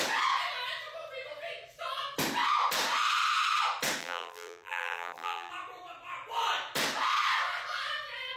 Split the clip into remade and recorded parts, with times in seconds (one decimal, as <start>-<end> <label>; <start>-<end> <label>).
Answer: 0.0-4.0 recorded; 4.0-5.5 remade; 5.5-8.4 recorded